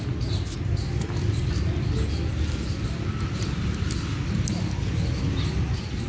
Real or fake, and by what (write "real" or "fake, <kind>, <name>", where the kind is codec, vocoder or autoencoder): real